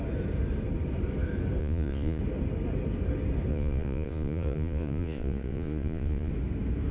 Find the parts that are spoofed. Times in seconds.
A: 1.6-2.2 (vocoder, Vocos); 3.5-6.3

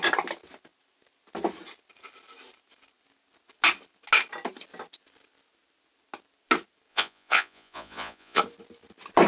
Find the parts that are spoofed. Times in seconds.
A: 6.9-8.4 (vocoder, Vocos)

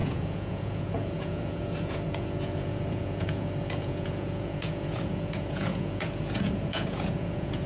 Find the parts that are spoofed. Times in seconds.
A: 0.0-7.7 (vocoder, Vocos)

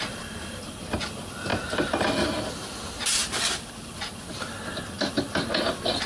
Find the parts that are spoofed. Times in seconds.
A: none

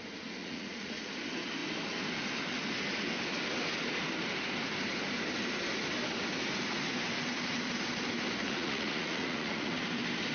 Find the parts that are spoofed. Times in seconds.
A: 0.4-1.1 (vocoder, Vocos); 8.4-9.7

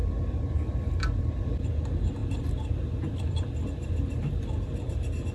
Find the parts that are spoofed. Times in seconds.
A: none

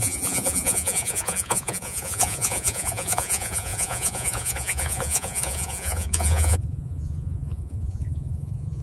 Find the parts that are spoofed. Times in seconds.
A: 0.0-8.8 (vocoder, Vocos)

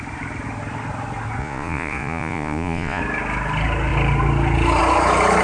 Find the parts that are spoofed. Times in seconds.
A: 1.4-3.0 (vocoder, Vocos)